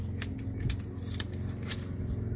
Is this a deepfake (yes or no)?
no